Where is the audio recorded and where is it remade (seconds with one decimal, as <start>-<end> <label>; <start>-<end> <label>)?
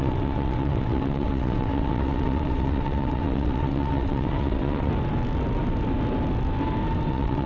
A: 0.0-4.9 remade; 4.9-7.1 recorded; 7.1-7.5 remade